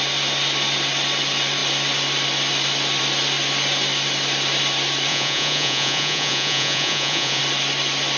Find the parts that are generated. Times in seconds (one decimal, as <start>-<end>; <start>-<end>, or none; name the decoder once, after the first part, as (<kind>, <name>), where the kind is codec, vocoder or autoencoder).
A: 5.1-7.4 (vocoder, Vocos)